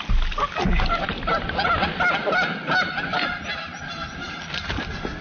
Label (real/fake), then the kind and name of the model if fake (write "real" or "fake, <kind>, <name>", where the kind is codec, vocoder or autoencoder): real